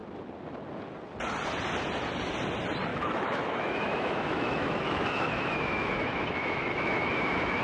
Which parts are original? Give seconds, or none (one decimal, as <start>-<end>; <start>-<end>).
0.0-2.9